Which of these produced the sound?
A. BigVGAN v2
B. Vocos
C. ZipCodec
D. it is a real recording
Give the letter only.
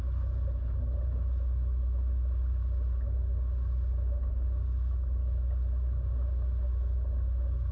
D